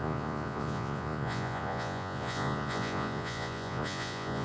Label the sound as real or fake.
fake